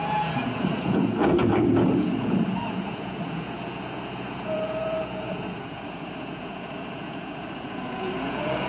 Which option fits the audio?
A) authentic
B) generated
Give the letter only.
B